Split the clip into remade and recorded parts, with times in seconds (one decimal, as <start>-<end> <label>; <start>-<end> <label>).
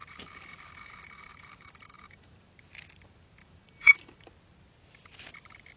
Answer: 0.0-2.5 remade; 2.5-3.4 recorded; 3.4-4.3 remade; 4.3-5.8 recorded